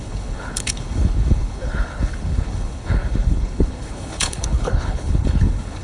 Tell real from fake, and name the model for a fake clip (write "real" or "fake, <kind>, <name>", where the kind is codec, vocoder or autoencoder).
fake, codec, HILCodec